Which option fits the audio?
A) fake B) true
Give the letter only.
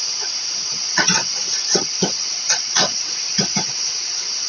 A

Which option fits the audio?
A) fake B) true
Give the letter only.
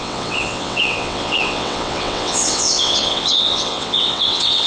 A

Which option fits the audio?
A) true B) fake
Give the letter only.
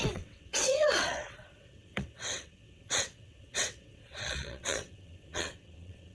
B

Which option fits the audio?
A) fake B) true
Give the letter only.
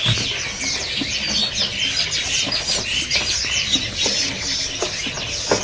B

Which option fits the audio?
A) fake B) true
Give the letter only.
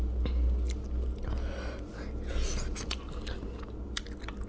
B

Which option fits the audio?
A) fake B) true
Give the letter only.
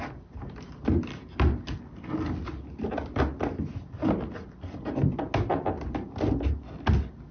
B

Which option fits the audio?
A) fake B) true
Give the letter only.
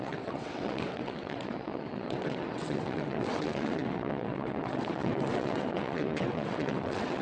A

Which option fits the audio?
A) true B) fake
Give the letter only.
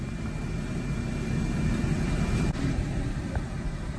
A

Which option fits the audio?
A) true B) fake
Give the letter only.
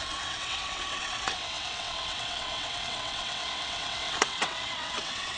B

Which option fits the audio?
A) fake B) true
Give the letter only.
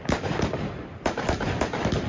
B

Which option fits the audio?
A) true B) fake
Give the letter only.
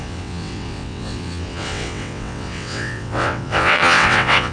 B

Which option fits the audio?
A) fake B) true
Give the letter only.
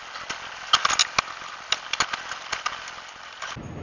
B